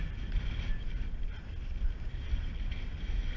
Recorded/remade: recorded